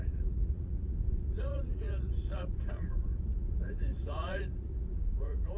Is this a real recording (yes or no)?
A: no